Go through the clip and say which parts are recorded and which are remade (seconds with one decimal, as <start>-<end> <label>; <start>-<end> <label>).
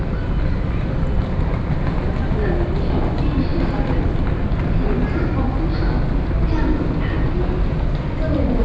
0.0-8.6 recorded